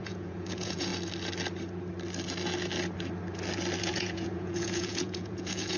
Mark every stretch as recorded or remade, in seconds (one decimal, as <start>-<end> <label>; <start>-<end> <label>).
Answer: 0.0-0.9 remade; 0.9-3.8 recorded; 3.8-5.8 remade